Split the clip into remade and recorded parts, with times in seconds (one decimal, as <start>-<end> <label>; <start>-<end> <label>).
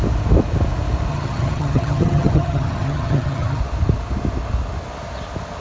0.0-1.1 recorded; 1.1-3.6 remade; 3.6-5.6 recorded